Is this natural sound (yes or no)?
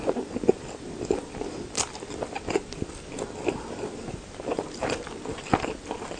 no